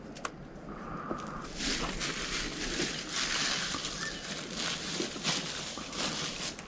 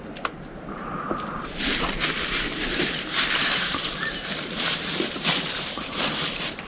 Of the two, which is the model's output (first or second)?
second